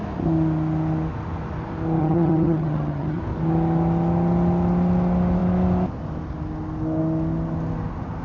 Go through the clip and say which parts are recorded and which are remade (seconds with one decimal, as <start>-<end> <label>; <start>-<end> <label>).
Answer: 0.0-2.0 recorded; 2.0-3.2 remade; 3.2-8.2 recorded